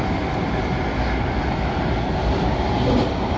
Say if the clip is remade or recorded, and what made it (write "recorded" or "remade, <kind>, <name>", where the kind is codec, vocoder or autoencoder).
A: recorded